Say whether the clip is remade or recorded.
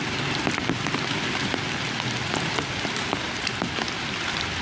recorded